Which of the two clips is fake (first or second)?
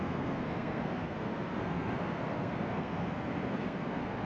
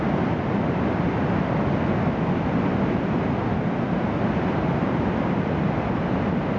first